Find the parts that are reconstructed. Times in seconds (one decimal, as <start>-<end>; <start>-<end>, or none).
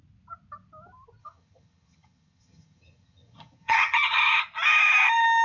1.2-4.4